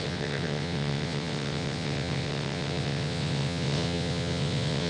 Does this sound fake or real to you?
fake